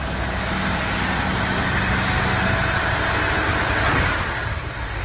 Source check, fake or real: real